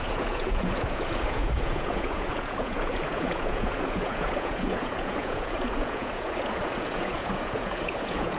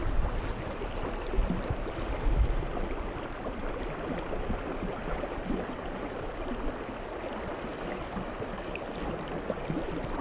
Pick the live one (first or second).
second